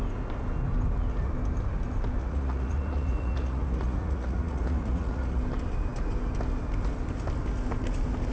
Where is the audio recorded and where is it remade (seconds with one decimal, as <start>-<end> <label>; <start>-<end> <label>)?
0.0-2.2 recorded; 2.2-5.4 remade; 5.4-8.3 recorded